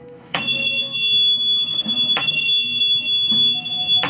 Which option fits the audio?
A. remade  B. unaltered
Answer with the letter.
A